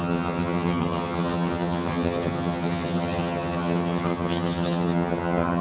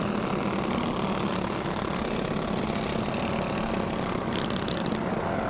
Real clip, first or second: second